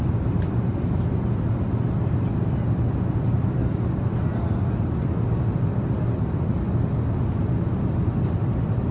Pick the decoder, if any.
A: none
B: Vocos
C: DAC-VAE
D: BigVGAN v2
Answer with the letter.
A